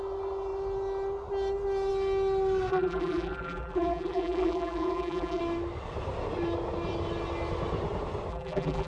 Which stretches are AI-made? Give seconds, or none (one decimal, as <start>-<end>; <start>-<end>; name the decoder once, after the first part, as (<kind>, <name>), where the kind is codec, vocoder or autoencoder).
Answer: 2.7-5.4 (vocoder, BigVGAN v2); 8.3-8.9